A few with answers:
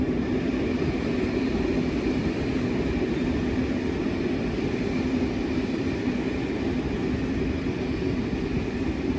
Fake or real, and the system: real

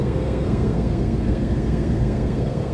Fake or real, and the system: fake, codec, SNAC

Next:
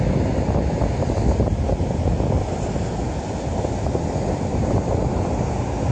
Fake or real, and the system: real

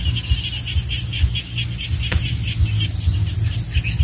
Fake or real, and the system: real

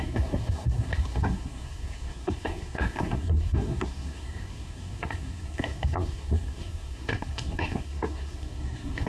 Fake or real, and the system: fake, codec, SNAC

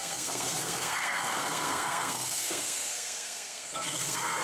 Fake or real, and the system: fake, codec, SNAC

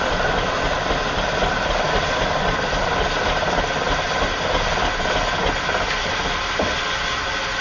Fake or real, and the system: real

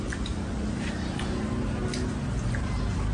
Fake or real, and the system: real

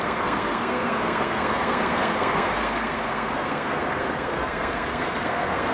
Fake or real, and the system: fake, codec, SNAC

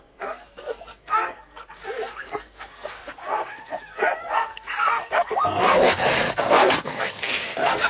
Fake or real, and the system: fake, codec, SNAC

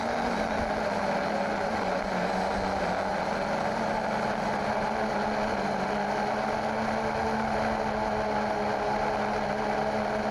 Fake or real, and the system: real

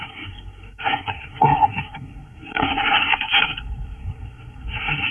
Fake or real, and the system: fake, codec, SNAC